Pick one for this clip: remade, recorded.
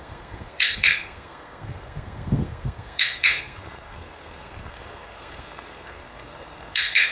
remade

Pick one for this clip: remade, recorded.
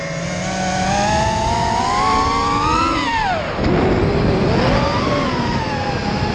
recorded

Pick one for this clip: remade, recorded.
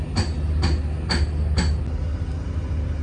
recorded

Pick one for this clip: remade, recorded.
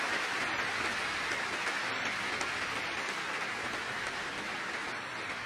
recorded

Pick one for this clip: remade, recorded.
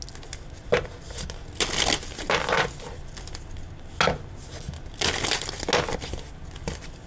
recorded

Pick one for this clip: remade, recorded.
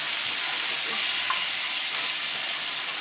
recorded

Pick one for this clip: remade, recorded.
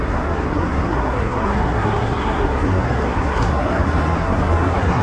remade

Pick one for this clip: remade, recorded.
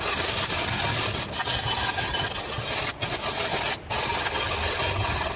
recorded